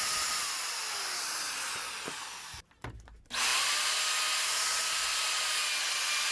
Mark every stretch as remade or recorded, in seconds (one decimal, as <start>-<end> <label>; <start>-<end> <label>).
0.0-6.3 recorded